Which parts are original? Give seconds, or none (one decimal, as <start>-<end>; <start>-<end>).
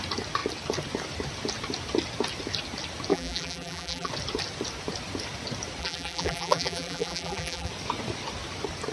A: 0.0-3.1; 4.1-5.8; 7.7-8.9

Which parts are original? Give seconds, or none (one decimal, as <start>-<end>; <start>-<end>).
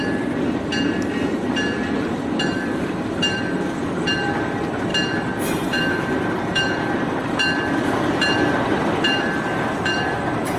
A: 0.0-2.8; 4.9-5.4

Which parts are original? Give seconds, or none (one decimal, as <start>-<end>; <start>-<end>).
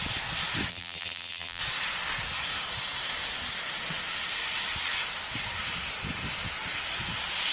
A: 0.0-0.7; 1.6-7.5